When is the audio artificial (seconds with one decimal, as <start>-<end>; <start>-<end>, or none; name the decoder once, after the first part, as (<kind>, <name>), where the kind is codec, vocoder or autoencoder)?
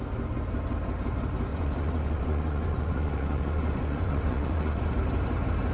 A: 1.5-4.9 (vocoder, Vocos)